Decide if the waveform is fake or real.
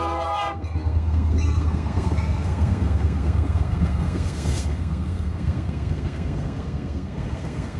fake